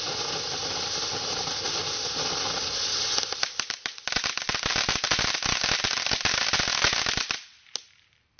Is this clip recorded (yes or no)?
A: yes